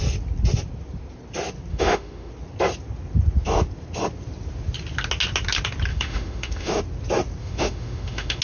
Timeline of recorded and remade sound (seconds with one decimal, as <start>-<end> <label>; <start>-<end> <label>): 0.0-1.7 recorded; 1.7-2.3 remade; 2.3-5.9 recorded; 5.9-6.8 remade; 6.8-7.4 recorded; 7.4-8.4 remade